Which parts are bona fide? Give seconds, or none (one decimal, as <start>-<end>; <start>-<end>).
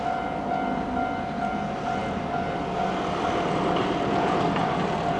0.0-5.2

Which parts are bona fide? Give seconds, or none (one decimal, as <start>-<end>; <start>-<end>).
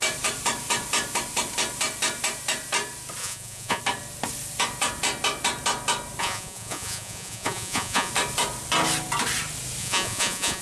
0.0-3.2; 3.8-6.2; 8.1-9.8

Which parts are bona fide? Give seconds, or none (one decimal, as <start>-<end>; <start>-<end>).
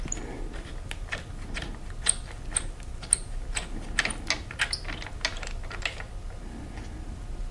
0.0-7.5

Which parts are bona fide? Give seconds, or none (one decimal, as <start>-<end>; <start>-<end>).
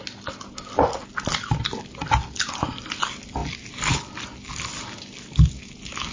0.0-6.1